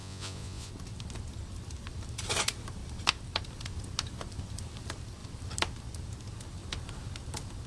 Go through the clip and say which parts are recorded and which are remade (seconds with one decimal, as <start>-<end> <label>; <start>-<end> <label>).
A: 0.0-0.7 remade; 0.7-7.7 recorded